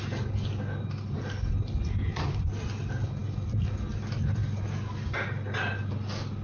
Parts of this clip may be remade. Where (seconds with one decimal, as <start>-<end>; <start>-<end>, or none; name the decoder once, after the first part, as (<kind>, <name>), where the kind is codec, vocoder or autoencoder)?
none